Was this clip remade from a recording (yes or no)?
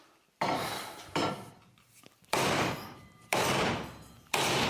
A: yes